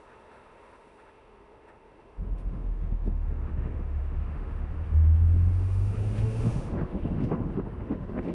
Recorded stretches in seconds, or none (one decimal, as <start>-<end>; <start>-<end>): none